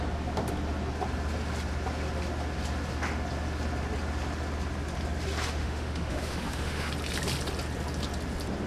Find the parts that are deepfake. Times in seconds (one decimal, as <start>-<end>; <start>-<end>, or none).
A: 5.6-6.9